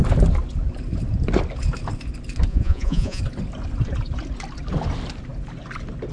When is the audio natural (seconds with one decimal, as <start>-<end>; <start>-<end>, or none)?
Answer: 0.0-2.5; 3.2-6.1